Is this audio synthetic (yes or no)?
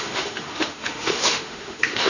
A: yes